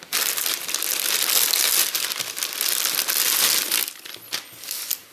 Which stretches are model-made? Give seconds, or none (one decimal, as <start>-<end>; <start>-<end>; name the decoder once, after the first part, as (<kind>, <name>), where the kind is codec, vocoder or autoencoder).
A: none